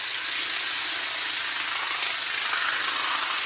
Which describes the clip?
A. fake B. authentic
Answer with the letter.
B